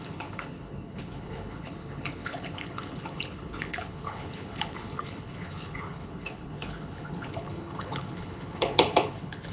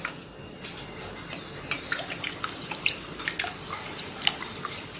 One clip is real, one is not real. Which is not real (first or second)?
first